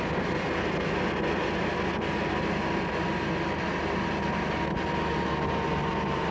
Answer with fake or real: real